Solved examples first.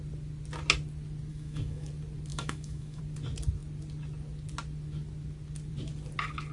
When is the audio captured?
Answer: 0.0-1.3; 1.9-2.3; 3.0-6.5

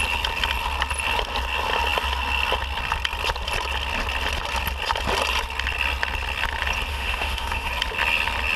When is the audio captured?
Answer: 0.0-6.9; 7.7-8.6

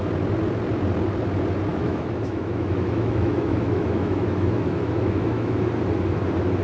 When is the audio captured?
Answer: 0.0-1.7; 5.6-6.6